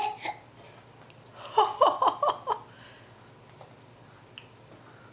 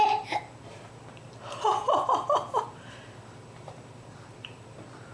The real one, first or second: first